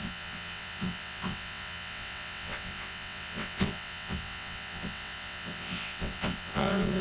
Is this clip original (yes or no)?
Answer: no